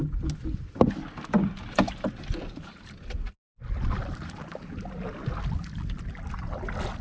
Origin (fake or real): real